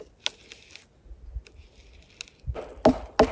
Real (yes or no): yes